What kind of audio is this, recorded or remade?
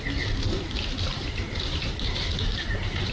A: recorded